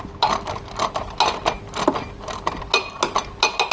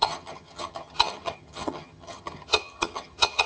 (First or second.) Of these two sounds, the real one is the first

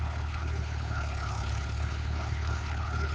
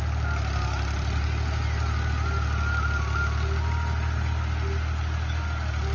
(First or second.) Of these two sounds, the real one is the second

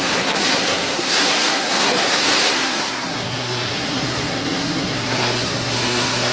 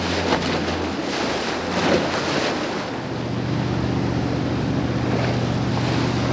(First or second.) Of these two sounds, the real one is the second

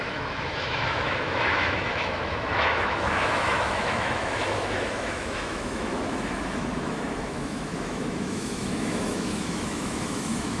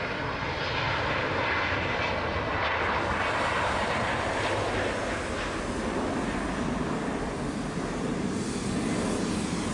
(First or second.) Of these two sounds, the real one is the second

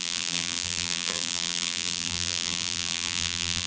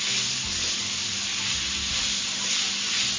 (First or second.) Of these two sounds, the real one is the second